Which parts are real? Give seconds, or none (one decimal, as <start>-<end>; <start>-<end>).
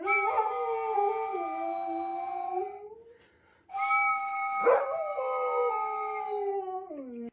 0.0-7.3